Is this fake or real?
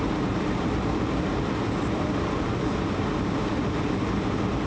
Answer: fake